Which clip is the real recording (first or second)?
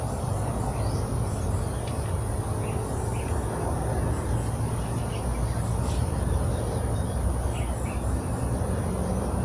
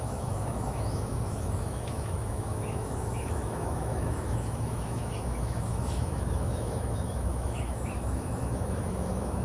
first